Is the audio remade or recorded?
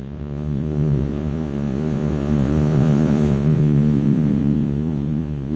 remade